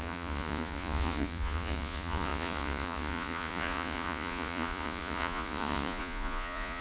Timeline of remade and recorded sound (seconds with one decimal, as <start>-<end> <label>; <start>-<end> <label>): 0.0-6.8 remade